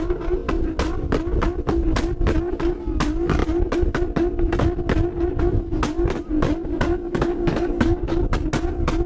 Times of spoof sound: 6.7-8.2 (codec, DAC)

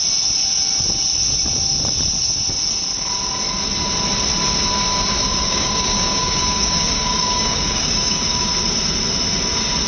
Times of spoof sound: 5.4-8.5 (codec, DAC)